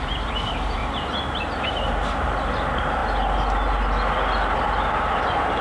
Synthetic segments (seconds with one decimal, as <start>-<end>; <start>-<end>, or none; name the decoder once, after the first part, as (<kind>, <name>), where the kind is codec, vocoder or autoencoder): 0.0-0.8 (vocoder, BigVGAN v2); 1.4-3.0; 4.6-5.6